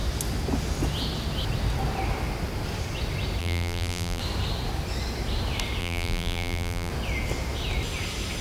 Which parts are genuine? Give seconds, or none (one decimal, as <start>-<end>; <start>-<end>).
0.0-3.4; 4.2-5.8; 6.9-8.4

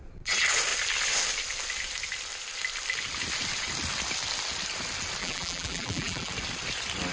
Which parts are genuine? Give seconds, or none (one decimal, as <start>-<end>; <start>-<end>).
0.0-5.2; 6.3-7.1

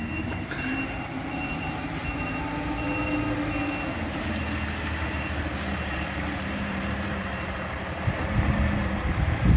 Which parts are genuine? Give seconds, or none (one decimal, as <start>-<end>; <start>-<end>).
2.0-5.4

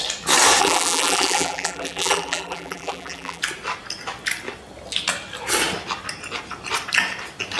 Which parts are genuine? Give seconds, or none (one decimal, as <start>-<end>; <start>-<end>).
0.0-0.6; 3.4-7.6

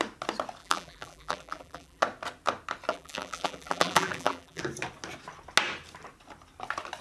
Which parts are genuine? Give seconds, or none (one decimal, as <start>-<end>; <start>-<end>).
0.0-0.6; 2.0-2.9; 4.6-7.0

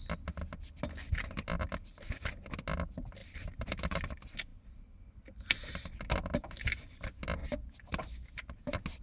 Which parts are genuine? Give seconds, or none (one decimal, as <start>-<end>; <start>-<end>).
0.0-3.2; 3.8-7.4; 8.6-9.0

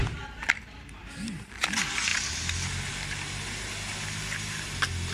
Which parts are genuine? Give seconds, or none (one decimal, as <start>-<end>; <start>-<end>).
1.6-2.1; 2.9-5.1